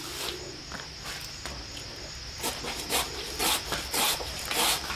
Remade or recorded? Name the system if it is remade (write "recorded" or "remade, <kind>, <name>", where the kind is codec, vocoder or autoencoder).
recorded